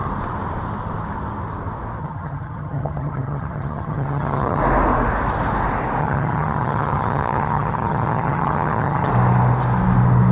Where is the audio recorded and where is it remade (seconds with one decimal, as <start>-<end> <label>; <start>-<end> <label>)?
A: 0.0-2.0 recorded; 2.0-4.6 remade; 4.6-6.0 recorded; 6.0-9.1 remade; 9.1-10.3 recorded